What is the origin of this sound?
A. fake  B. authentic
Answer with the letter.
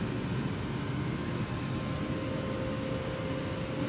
B